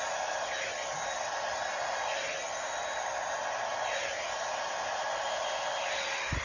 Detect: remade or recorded remade